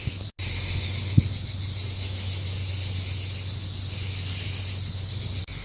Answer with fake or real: real